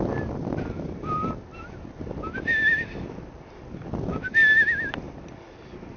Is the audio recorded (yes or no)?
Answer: yes